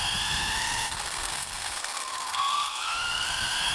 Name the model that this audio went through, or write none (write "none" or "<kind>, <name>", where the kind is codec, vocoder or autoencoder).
codec, SNAC